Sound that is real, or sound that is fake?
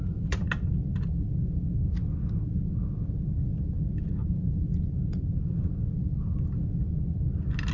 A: real